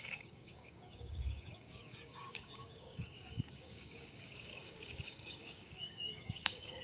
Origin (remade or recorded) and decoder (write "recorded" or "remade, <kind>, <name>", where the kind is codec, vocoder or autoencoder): remade, codec, DAC